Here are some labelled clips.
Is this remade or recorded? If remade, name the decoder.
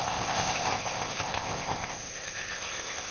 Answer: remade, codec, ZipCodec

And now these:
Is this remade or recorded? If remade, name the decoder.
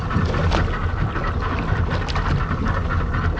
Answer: recorded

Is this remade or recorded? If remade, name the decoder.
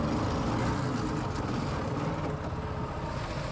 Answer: recorded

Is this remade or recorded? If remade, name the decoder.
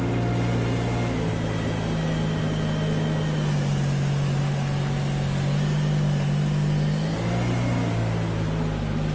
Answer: recorded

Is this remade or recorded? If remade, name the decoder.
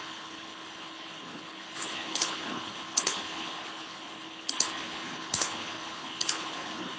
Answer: remade, codec, HILCodec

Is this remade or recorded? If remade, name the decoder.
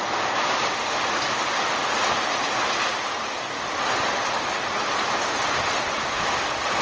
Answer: recorded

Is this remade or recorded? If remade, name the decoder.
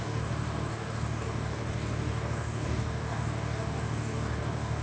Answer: remade, codec, DAC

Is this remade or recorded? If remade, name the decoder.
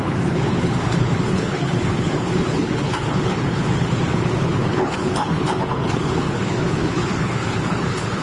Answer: remade, codec, HILCodec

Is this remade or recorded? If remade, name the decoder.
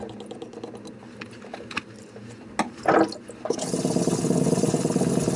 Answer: recorded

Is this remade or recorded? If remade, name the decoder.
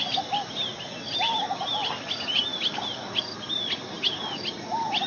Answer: recorded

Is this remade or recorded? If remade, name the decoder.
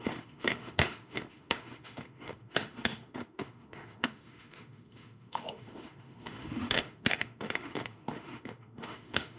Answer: remade, autoencoder, DAC-VAE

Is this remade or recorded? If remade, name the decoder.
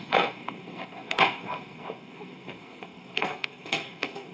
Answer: remade, codec, SNAC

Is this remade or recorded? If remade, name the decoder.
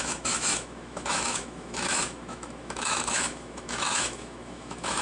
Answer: remade, autoencoder, DAC-VAE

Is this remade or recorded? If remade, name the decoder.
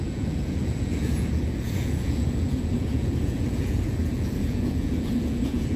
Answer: remade, vocoder, Vocos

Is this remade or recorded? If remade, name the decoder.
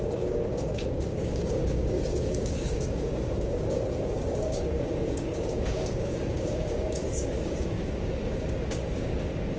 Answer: remade, codec, DAC